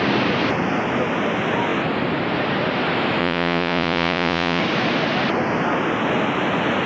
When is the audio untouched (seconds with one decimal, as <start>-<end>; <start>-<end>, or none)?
0.0-3.2; 4.6-6.9

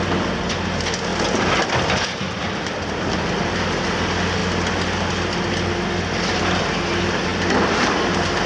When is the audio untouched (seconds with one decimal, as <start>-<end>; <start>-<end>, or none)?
0.0-1.1; 3.6-8.5